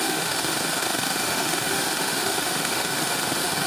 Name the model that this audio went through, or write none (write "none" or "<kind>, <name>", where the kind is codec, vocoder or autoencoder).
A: autoencoder, DAC-VAE